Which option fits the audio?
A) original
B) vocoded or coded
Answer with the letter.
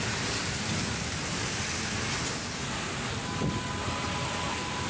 A